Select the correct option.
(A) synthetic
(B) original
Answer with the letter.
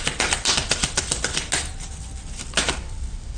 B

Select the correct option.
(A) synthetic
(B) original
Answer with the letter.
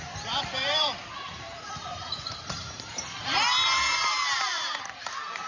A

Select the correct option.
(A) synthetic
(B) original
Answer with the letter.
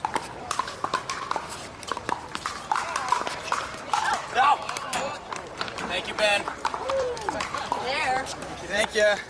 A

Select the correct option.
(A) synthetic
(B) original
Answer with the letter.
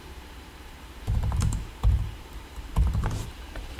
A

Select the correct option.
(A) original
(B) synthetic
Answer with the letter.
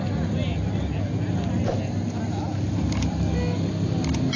A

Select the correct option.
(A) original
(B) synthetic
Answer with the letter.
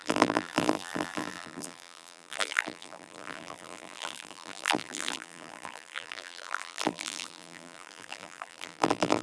B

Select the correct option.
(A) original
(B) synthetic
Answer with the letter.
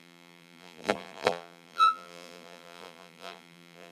B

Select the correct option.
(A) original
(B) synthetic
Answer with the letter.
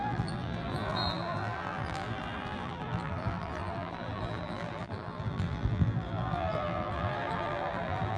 B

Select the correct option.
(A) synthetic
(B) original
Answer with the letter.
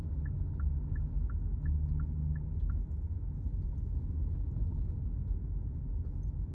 B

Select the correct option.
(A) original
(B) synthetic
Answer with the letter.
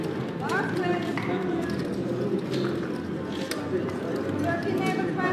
A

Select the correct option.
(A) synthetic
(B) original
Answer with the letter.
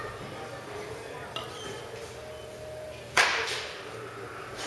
B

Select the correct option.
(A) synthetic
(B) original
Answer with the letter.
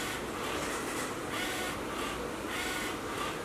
B